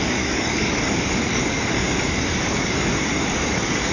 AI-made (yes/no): yes